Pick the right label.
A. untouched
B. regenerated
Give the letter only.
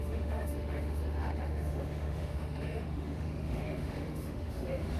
B